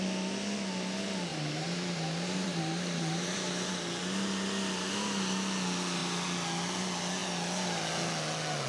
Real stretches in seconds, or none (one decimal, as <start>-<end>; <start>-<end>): 0.0-1.3; 3.7-8.7